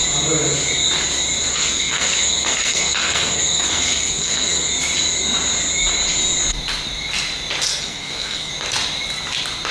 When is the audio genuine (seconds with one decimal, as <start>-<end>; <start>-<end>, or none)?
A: 0.0-1.5; 4.7-7.7; 8.5-9.7